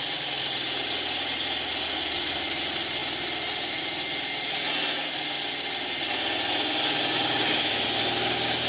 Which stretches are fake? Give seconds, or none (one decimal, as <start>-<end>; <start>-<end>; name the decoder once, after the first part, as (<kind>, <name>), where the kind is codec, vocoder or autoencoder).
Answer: none